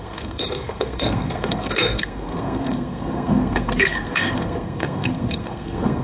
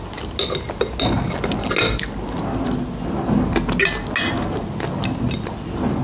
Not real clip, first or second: first